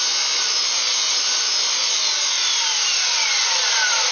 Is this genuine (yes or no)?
yes